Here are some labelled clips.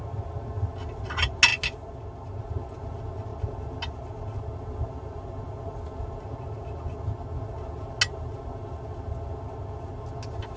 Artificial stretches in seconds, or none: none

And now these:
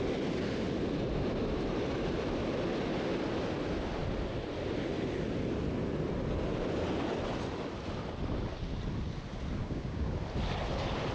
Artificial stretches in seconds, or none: 9.6-10.1 (codec, DAC)

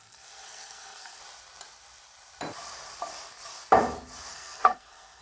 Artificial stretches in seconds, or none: 0.0-1.2 (codec, SNAC); 4.3-5.2

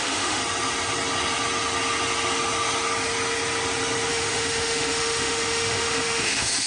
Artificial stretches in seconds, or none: 0.0-0.4 (autoencoder, DAC-VAE); 4.1-6.7

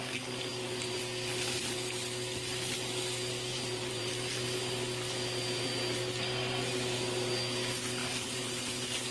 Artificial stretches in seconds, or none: 3.5-4.1 (vocoder, BigVGAN v2); 8.0-8.6

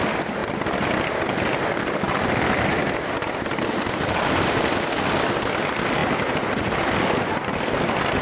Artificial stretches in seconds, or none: none

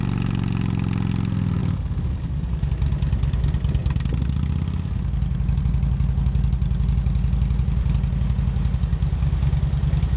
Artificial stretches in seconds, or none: 1.6-2.7 (codec, DAC)

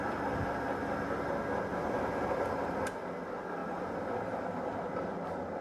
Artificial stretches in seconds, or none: 1.7-2.7 (vocoder, BigVGAN v2); 3.6-4.9